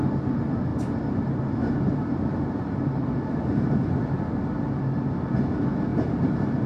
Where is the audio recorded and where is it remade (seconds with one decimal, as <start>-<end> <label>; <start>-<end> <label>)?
0.0-0.7 recorded; 0.7-4.2 remade; 4.2-5.9 recorded; 5.9-6.7 remade